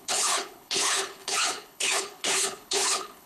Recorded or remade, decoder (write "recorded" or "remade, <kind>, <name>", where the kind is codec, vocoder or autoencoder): remade, codec, HILCodec